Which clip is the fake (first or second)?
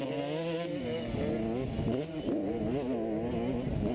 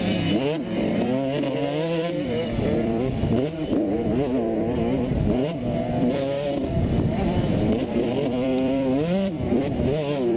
second